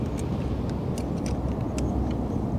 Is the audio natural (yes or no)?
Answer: yes